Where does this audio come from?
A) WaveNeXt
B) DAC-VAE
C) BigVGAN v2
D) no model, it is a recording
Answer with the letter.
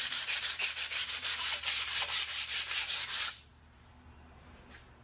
C